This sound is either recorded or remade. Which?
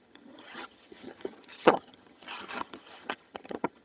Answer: remade